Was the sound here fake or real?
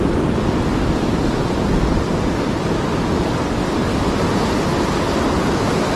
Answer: real